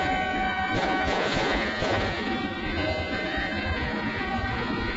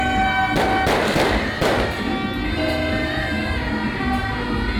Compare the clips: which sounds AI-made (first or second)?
first